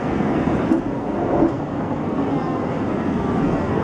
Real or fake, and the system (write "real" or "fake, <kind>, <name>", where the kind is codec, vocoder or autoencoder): fake, codec, SNAC